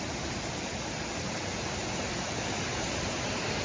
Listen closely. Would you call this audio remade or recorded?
recorded